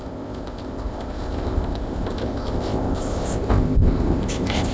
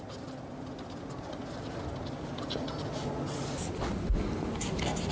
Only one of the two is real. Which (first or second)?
second